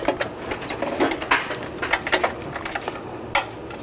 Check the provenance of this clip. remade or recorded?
recorded